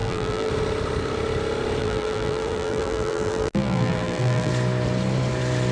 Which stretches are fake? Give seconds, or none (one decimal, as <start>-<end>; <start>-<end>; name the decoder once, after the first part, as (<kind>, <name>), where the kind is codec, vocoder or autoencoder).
0.0-0.5 (vocoder, BigVGAN v2); 1.8-4.5